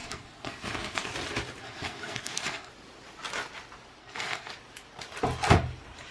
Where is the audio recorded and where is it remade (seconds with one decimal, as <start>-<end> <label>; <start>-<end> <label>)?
0.0-1.1 remade; 1.1-1.6 recorded; 1.6-2.7 remade; 2.7-4.0 recorded; 4.0-4.5 remade; 4.5-6.1 recorded